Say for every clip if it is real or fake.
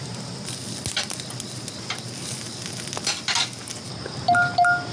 real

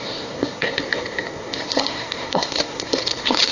fake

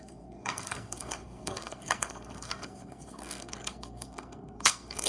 fake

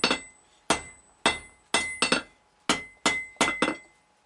real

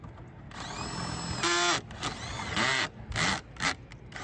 real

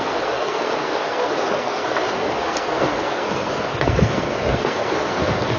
fake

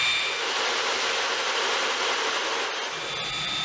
real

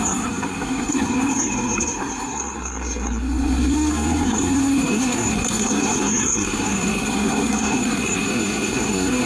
fake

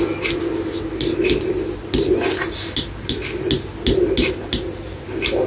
real